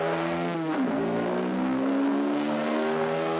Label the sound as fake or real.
fake